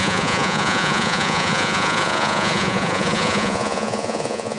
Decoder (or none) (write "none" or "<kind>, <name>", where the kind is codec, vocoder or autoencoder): vocoder, Vocos